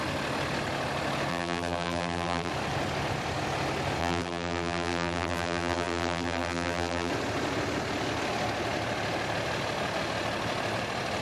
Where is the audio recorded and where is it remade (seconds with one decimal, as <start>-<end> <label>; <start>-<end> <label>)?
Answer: 0.0-1.3 recorded; 1.3-2.5 remade; 2.5-4.0 recorded; 4.0-7.1 remade; 7.1-11.2 recorded